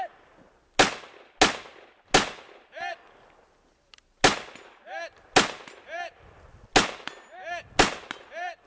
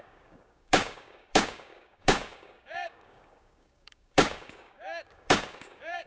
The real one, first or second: first